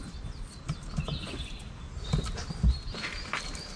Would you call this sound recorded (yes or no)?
yes